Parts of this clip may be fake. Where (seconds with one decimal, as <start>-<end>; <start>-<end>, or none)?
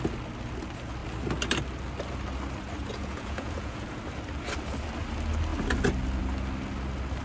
2.8-4.0